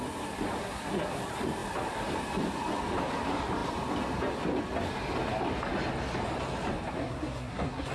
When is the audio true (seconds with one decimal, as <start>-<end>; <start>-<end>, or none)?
0.0-0.6; 1.2-7.0